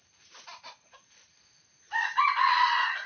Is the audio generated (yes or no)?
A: yes